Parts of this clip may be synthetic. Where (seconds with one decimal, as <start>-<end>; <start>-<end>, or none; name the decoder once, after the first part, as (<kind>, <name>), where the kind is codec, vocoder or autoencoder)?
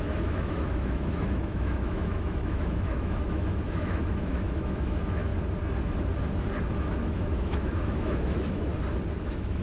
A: 0.0-5.3 (autoencoder, DAC-VAE); 6.8-8.7; 9.2-9.6